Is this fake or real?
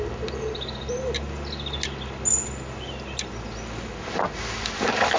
real